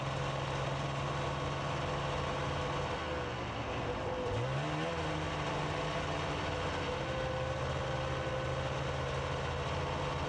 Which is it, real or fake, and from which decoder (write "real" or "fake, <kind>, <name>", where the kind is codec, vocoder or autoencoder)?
real